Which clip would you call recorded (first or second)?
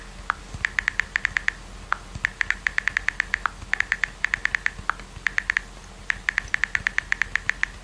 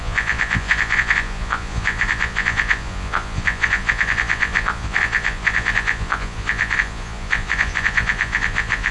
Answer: first